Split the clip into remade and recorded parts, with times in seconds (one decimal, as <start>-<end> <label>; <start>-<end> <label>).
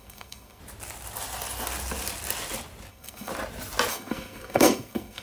0.0-0.6 remade; 0.6-2.9 recorded; 2.9-3.3 remade; 3.3-3.9 recorded; 3.9-5.2 remade